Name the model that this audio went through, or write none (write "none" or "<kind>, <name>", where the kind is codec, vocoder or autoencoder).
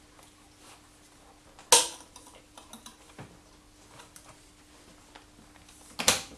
none